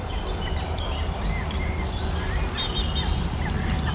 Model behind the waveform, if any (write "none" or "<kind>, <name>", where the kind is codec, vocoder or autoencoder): vocoder, BigVGAN v2